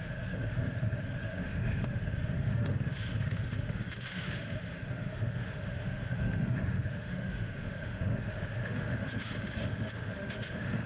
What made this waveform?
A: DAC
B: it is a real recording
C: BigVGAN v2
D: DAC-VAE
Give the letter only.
D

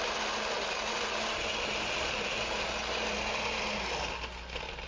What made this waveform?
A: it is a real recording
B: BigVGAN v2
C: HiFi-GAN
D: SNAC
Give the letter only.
A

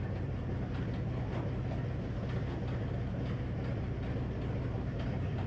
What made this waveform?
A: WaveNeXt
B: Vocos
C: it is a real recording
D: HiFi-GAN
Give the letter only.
C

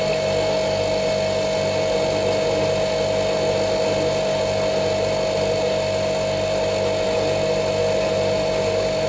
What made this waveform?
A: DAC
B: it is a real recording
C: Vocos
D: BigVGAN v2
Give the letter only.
B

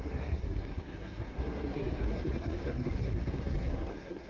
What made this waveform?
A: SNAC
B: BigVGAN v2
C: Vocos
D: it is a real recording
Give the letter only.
A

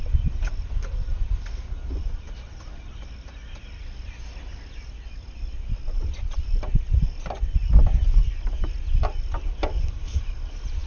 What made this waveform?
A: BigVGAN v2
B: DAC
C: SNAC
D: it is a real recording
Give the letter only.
D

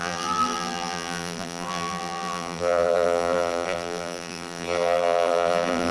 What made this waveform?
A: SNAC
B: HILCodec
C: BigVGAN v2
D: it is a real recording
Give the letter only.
C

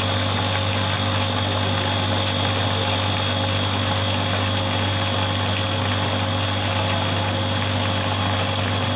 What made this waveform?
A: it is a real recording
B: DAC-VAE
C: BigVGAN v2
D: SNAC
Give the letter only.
A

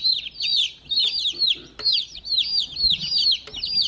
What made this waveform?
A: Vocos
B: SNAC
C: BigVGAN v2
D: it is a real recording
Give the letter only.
D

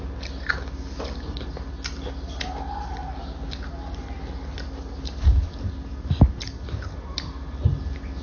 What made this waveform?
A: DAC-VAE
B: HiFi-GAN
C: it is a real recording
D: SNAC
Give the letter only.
C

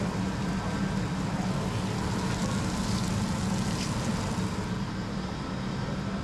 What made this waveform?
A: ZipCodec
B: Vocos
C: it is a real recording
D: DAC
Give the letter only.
C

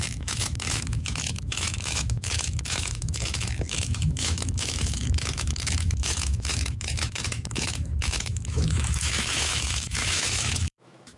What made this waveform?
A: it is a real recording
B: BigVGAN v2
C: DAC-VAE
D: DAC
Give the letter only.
C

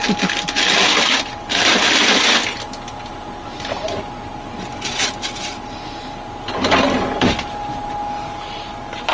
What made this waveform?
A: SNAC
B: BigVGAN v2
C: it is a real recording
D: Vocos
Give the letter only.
C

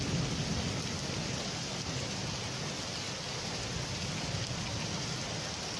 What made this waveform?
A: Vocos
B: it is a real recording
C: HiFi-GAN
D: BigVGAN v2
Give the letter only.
B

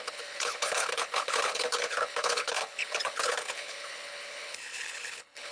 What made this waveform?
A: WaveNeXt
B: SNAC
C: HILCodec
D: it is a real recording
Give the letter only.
C